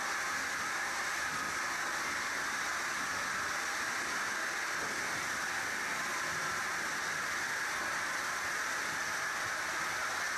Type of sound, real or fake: real